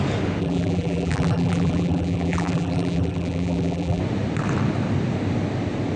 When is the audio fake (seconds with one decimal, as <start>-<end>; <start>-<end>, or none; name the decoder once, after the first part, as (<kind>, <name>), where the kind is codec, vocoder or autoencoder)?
0.4-4.0 (vocoder, BigVGAN v2)